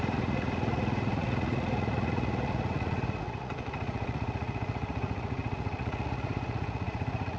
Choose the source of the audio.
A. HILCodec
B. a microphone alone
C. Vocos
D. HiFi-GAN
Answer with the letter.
C